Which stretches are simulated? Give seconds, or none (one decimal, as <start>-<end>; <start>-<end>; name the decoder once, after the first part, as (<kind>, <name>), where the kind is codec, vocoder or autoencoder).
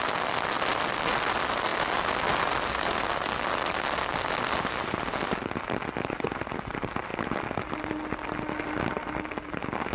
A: none